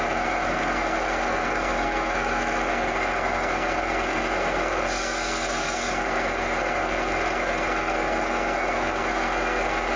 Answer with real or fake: fake